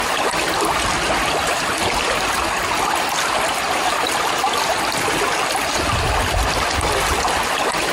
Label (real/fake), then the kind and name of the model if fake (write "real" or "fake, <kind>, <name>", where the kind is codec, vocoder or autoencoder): real